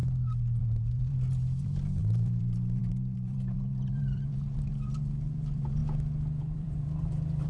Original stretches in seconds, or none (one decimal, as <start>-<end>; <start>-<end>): 0.0-0.6; 5.8-6.4